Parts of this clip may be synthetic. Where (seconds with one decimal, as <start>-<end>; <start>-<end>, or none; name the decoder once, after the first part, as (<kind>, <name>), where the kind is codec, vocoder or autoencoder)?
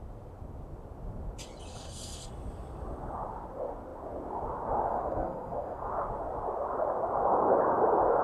1.7-2.3 (codec, SNAC); 4.9-5.9